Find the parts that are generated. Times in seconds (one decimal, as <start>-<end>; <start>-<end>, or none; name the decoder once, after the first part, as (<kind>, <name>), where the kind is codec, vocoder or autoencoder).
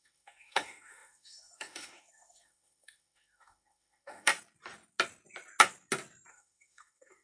0.0-4.3 (autoencoder, DAC-VAE); 6.3-7.2